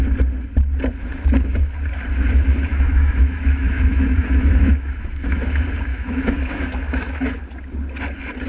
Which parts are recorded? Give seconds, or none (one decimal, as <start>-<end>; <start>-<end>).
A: 0.0-2.7; 5.4-5.9; 7.3-8.5